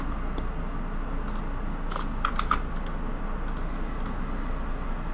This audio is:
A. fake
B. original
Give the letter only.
B